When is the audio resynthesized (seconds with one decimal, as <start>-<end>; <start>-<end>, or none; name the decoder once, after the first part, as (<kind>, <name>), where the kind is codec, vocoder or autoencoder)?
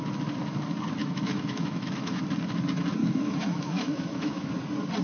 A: 1.0-2.2 (autoencoder, DAC-VAE); 3.0-4.5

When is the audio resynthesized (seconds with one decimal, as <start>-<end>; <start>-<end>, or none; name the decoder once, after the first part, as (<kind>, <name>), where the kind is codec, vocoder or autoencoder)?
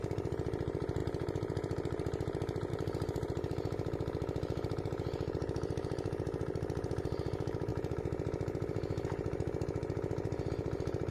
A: 0.0-11.1 (vocoder, BigVGAN v2)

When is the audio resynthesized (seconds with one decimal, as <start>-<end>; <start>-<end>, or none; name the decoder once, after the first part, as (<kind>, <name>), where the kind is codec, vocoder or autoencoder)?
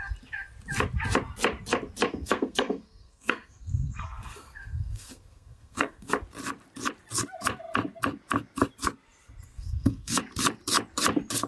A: 2.1-6.1 (codec, SNAC); 9.5-10.2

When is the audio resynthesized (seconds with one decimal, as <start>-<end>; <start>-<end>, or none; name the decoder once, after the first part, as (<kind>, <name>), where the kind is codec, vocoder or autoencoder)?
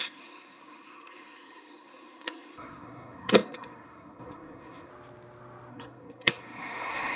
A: 0.0-4.9 (codec, SNAC); 5.7-7.2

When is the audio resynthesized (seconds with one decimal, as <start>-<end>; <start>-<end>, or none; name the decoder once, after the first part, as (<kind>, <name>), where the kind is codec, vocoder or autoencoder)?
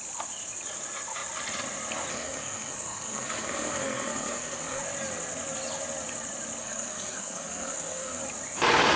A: 2.1-4.8 (codec, SNAC); 6.6-8.2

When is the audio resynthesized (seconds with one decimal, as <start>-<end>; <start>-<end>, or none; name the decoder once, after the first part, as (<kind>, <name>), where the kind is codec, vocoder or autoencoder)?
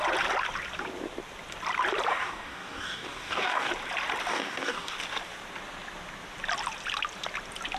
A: 2.1-3.7 (codec, DAC); 4.3-4.9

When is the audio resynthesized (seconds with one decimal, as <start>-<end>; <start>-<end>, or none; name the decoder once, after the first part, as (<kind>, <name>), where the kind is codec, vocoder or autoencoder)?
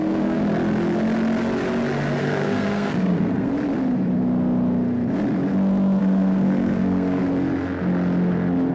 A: 0.0-0.4 (codec, SNAC); 2.2-3.5; 6.0-7.2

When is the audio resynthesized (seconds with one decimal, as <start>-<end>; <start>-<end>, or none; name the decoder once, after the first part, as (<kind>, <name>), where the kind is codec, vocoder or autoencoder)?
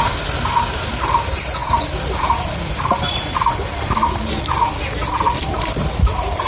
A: none